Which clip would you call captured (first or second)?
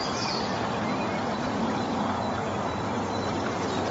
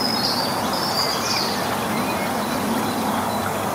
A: second